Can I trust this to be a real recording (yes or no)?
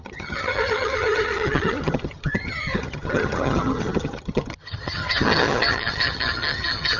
no